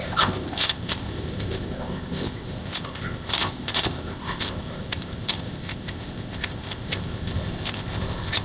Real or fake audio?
fake